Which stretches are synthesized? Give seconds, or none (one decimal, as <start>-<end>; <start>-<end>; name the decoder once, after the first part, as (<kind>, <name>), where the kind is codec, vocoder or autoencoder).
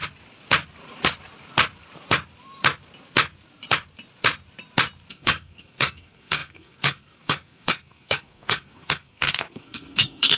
5.1-10.4 (codec, SNAC)